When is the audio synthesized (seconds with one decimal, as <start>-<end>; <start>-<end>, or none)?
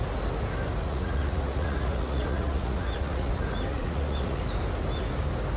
0.8-3.3; 3.7-4.4